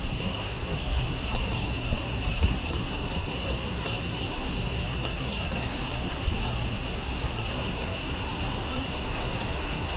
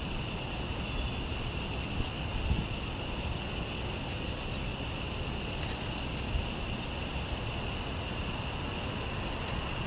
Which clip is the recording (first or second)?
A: second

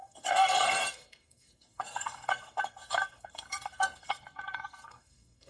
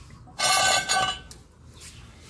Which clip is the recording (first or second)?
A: second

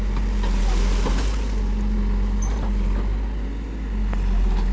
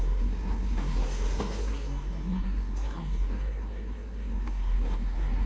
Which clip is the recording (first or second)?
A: first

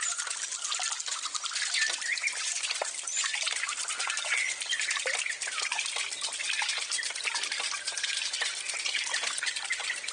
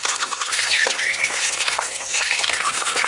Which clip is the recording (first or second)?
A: first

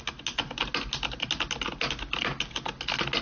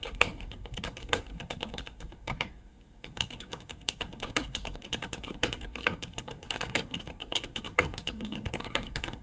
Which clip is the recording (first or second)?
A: first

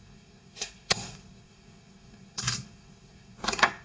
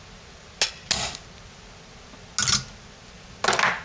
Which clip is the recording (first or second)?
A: second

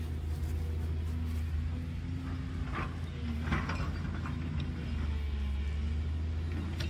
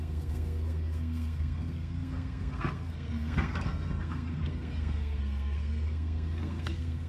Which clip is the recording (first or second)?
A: first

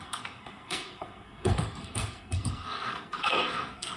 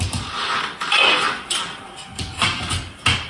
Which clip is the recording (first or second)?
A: second